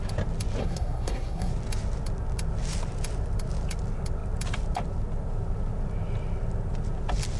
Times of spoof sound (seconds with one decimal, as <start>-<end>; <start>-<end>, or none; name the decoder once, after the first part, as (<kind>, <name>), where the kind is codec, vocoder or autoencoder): 0.6-1.5 (codec, SNAC)